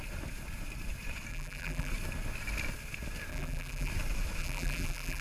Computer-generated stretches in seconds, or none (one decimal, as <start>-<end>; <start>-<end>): 1.3-1.9; 3.3-3.9; 4.4-5.2